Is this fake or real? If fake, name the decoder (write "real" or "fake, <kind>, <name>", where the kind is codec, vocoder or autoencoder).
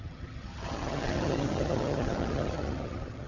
fake, vocoder, HiFi-GAN